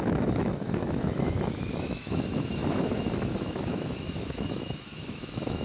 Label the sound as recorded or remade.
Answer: remade